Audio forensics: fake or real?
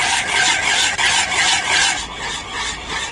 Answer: real